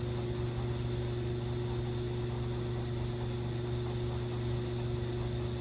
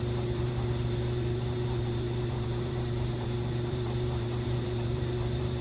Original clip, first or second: first